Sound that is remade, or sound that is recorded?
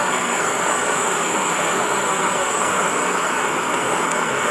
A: remade